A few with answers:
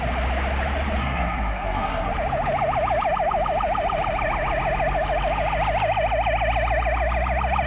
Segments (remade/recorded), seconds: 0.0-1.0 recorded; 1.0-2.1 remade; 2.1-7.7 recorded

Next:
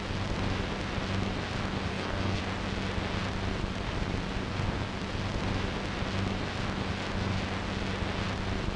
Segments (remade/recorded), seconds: 0.0-1.9 recorded; 1.9-2.4 remade; 2.4-8.8 recorded